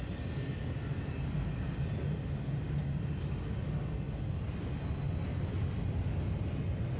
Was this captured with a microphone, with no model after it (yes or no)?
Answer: yes